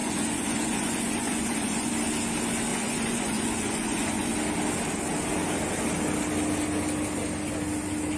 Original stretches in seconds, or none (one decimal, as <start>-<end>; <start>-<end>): 1.9-2.7; 4.3-8.2